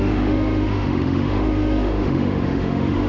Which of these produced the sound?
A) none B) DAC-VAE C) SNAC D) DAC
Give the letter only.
B